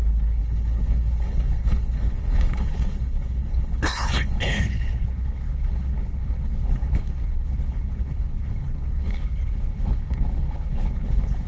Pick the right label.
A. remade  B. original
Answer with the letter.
A